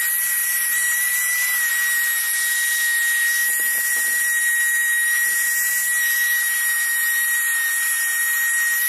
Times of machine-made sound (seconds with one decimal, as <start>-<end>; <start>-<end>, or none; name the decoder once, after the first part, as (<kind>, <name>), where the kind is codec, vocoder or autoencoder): 0.4-1.7 (vocoder, BigVGAN v2); 3.4-8.2